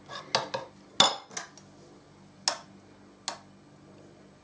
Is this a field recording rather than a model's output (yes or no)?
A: yes